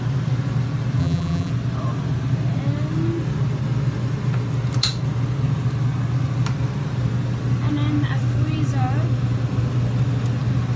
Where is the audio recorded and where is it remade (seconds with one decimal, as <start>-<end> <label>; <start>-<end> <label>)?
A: 0.0-1.0 recorded; 1.0-1.5 remade; 1.5-10.8 recorded